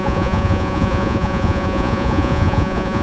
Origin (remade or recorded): remade